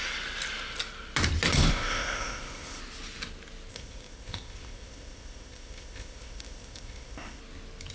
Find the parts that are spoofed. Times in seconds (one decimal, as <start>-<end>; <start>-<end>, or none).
1.7-2.8; 3.7-7.4